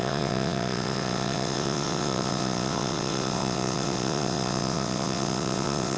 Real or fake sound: fake